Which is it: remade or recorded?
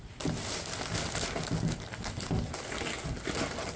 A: recorded